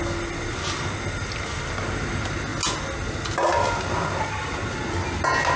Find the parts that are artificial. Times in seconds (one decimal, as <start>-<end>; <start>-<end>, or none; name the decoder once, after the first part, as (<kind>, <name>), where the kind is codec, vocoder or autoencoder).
none